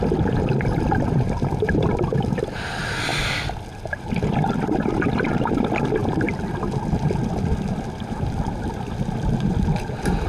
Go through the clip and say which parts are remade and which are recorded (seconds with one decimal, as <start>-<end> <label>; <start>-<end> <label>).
0.0-10.3 remade